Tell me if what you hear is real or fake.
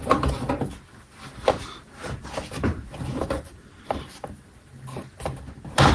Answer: real